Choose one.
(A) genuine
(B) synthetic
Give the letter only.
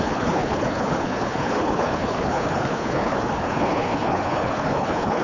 B